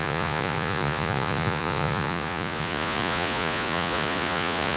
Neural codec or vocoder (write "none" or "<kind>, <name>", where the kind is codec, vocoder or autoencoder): vocoder, Vocos